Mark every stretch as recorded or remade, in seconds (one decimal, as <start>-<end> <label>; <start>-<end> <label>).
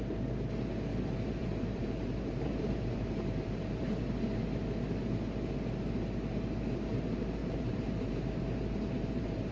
0.0-1.4 recorded; 1.4-3.8 remade; 3.8-7.4 recorded; 7.4-9.5 remade